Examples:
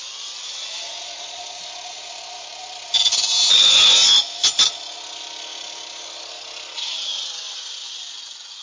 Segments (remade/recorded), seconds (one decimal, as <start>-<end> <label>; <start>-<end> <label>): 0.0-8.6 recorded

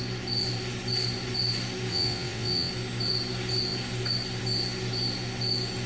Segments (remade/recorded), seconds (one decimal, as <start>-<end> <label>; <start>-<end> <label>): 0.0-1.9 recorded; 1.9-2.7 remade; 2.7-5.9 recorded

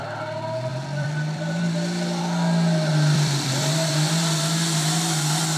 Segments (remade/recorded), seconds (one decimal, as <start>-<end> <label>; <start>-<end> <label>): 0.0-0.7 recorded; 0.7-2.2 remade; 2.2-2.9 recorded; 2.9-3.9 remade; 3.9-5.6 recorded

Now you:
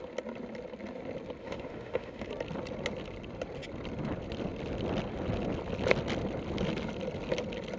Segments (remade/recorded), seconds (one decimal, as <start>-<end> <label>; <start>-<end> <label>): 0.0-1.4 recorded; 1.4-2.3 remade; 2.3-7.8 recorded